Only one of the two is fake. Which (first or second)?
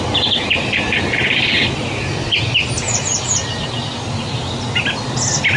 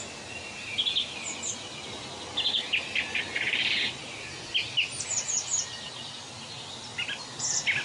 first